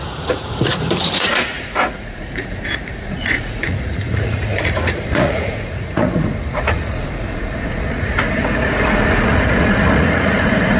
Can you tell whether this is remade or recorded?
remade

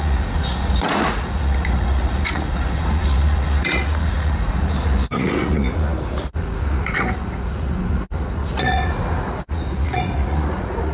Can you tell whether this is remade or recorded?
remade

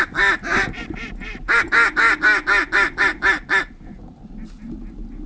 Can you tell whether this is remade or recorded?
recorded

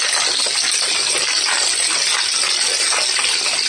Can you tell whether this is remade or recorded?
recorded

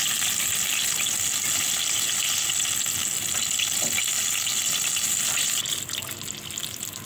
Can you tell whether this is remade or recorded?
recorded